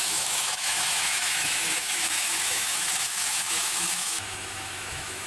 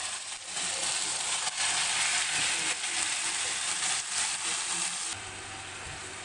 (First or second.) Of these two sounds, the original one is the second